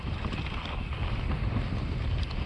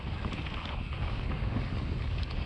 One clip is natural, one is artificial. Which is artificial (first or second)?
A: second